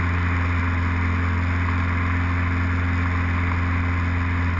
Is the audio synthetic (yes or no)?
no